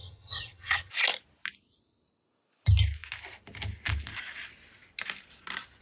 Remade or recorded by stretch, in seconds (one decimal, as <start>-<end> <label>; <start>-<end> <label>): 0.0-0.9 remade; 0.9-5.8 recorded

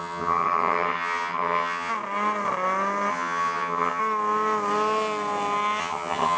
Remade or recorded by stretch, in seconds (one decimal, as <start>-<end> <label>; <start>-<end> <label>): 0.0-1.9 remade; 1.9-3.1 recorded; 3.1-4.0 remade; 4.0-5.8 recorded; 5.8-6.4 remade

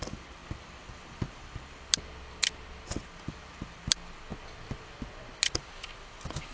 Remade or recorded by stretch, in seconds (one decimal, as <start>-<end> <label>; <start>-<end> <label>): 0.0-6.5 recorded

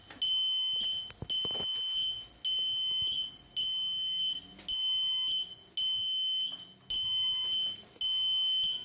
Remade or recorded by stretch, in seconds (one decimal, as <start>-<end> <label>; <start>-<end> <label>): 0.0-8.8 recorded

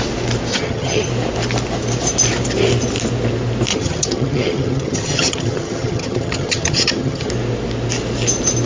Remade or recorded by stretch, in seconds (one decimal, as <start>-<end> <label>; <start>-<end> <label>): 0.0-0.5 recorded; 0.5-1.1 remade; 1.1-3.7 recorded; 3.7-7.3 remade; 7.3-8.7 recorded